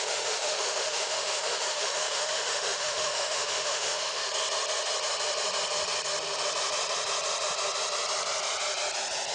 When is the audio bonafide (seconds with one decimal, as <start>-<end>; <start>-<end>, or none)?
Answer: 4.2-9.3